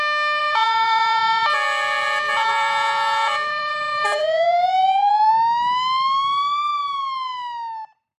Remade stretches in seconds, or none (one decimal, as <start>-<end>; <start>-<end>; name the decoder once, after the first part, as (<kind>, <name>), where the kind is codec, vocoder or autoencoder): 0.4-5.3 (vocoder, Vocos)